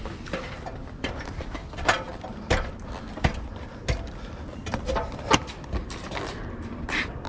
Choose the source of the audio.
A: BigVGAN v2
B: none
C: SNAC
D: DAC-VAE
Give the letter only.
B